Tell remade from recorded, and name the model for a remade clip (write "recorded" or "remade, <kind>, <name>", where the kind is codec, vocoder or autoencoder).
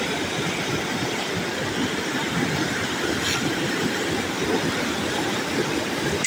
recorded